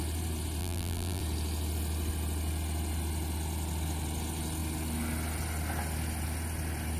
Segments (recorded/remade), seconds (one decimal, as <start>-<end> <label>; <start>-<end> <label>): 0.0-0.6 recorded; 0.6-1.2 remade; 1.2-7.0 recorded